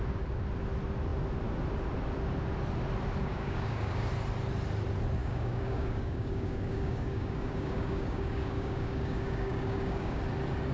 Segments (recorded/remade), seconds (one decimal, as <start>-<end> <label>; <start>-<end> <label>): 0.0-3.2 recorded; 3.2-4.1 remade; 4.1-5.2 recorded; 5.2-10.2 remade; 10.2-10.7 recorded